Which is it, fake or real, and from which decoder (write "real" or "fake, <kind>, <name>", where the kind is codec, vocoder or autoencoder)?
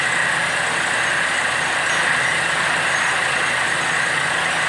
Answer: real